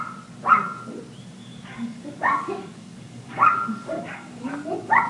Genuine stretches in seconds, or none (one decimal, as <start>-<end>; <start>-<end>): 0.0-1.4; 4.5-5.1

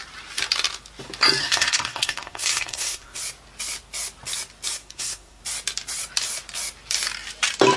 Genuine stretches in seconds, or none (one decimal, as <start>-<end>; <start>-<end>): 0.0-1.4; 3.2-4.8; 5.4-7.8

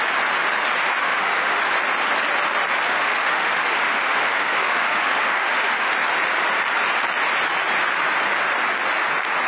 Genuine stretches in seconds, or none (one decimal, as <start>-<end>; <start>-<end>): 0.0-1.0; 1.6-2.9; 5.9-9.5

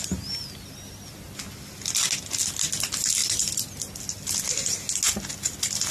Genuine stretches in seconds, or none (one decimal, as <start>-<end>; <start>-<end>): 0.0-5.9

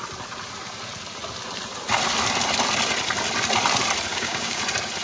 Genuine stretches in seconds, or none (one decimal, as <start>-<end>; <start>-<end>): 0.0-4.1; 4.6-5.0

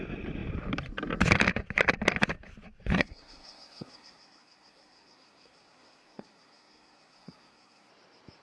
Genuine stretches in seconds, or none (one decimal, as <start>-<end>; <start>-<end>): 0.0-2.9; 7.9-8.4

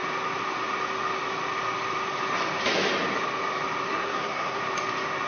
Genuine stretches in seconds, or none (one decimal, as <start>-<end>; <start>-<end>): 0.0-3.9; 4.6-5.3

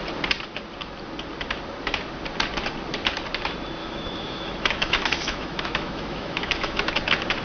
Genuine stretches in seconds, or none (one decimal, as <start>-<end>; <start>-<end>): 0.0-3.8; 6.9-7.4